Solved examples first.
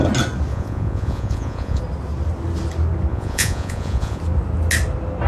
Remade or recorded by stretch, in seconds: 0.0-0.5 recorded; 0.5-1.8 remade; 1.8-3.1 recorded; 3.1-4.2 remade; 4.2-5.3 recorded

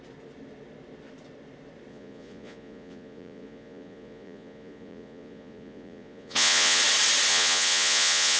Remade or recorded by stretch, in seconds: 0.0-1.9 recorded; 1.9-6.8 remade; 6.8-7.3 recorded; 7.3-8.4 remade

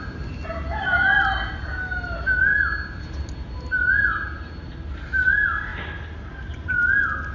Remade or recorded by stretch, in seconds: 0.0-7.3 recorded

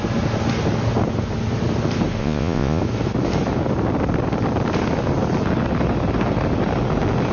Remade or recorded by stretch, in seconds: 0.0-2.2 recorded; 2.2-2.8 remade; 2.8-7.3 recorded

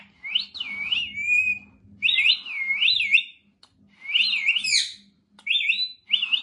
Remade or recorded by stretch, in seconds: 0.0-6.4 recorded

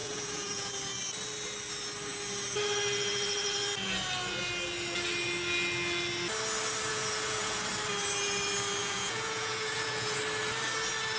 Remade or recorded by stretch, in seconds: 0.0-0.7 remade; 0.7-6.9 recorded; 6.9-7.6 remade; 7.6-8.8 recorded; 8.8-10.2 remade; 10.2-11.2 recorded

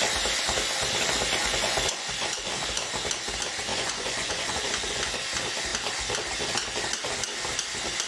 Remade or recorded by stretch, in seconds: 0.0-1.4 recorded; 1.4-2.5 remade; 2.5-3.7 recorded; 3.7-5.0 remade; 5.0-8.1 recorded